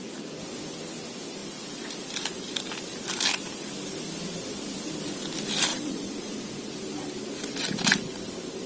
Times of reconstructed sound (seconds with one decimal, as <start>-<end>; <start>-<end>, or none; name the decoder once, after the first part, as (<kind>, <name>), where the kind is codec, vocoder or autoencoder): 5.7-6.7 (vocoder, Vocos)